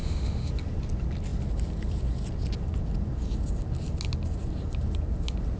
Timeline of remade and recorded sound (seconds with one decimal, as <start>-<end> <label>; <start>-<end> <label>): 0.0-0.5 remade; 0.5-5.6 recorded